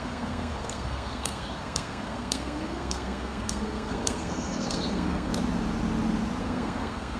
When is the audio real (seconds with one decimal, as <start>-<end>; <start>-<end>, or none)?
5.3-6.4